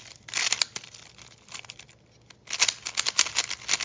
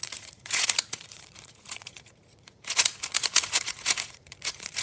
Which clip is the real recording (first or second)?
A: first